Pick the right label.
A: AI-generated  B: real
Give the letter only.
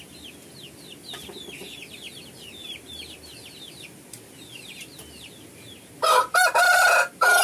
B